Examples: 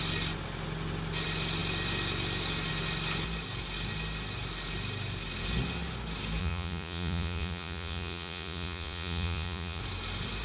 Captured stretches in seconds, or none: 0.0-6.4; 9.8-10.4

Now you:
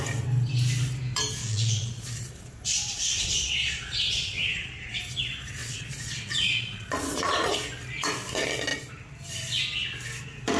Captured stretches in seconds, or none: 0.0-1.4; 5.0-5.6; 7.5-10.6

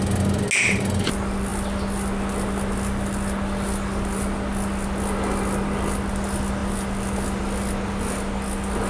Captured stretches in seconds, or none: 0.0-8.9

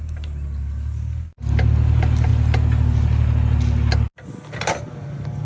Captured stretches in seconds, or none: 0.0-5.5

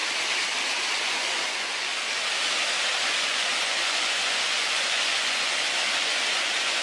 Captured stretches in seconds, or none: 0.0-0.9; 1.9-3.2

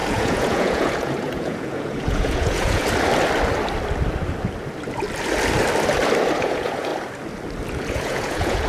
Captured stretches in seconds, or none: 2.8-6.4; 6.9-7.9

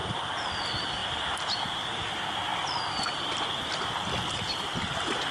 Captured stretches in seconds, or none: 0.0-5.3